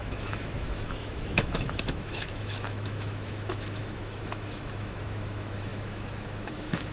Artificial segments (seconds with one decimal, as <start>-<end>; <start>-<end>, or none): 0.0-6.9